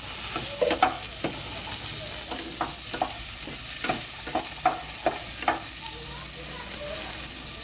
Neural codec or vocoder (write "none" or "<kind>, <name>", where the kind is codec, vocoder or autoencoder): none